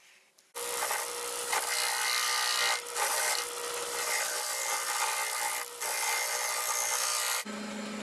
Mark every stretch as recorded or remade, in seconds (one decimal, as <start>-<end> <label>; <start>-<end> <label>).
0.0-8.0 recorded